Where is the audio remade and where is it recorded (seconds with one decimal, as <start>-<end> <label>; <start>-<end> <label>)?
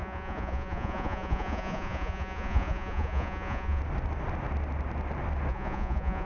0.0-3.8 remade; 3.8-5.5 recorded; 5.5-6.3 remade